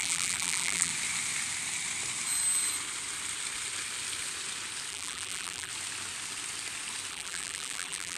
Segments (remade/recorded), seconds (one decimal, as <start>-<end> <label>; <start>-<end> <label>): 0.0-0.9 remade; 0.9-4.9 recorded; 4.9-5.7 remade; 5.7-7.1 recorded; 7.1-8.2 remade